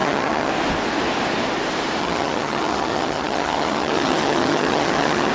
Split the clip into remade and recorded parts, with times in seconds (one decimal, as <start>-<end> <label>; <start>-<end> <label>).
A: 0.0-0.5 remade; 0.5-2.0 recorded; 2.0-5.3 remade